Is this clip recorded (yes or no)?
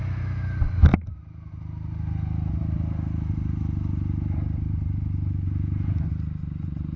yes